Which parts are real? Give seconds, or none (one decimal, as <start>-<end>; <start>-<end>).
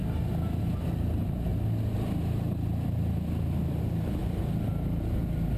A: 0.0-0.6; 1.5-3.8; 4.2-5.1